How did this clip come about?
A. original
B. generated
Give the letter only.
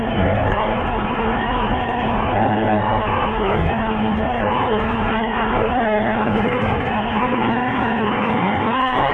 B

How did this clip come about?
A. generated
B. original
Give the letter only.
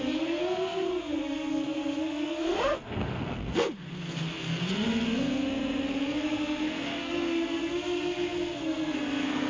A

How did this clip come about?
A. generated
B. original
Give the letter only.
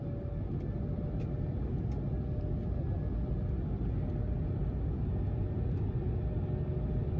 B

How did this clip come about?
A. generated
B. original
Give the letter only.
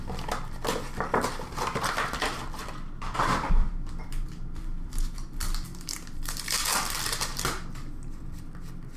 B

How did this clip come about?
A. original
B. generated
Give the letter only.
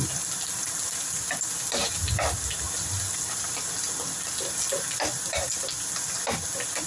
A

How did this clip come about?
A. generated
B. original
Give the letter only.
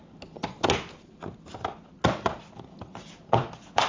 B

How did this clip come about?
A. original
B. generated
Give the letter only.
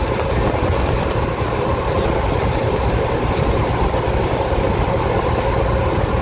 A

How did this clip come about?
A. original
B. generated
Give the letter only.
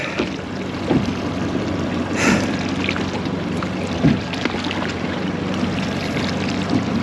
A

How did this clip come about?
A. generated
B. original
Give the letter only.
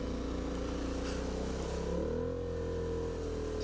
B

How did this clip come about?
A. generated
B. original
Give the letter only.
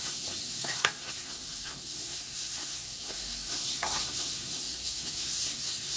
A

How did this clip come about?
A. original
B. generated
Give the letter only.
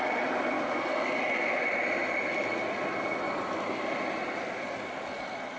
A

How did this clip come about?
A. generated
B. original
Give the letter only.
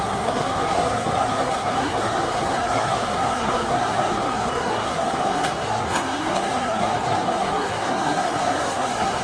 A